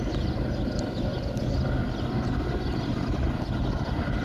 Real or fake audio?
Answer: real